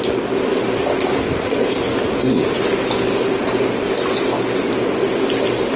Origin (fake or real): real